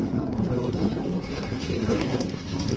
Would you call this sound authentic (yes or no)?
no